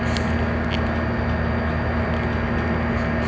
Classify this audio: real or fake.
real